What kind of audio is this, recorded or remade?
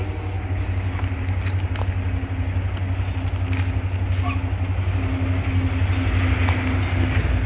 recorded